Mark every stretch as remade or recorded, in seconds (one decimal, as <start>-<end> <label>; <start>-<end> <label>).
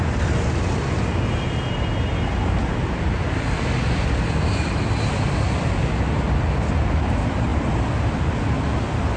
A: 0.0-9.2 recorded